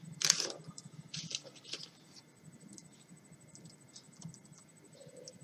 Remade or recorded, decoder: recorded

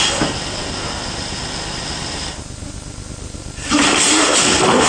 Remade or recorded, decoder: recorded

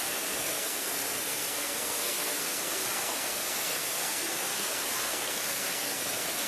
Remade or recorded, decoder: remade, codec, SNAC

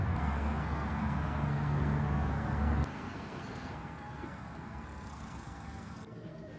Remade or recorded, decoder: remade, codec, SNAC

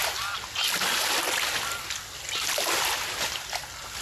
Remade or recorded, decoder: recorded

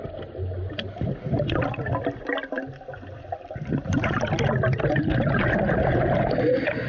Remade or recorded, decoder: recorded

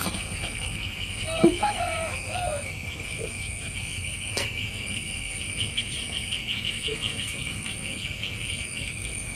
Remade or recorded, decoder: remade, codec, SNAC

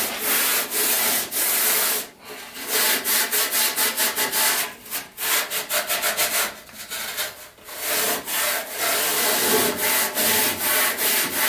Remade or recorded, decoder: recorded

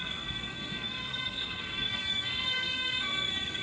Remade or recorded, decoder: remade, codec, SNAC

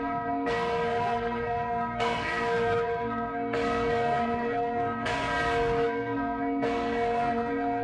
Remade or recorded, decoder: remade, codec, SNAC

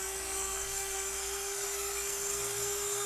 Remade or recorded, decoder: remade, codec, SNAC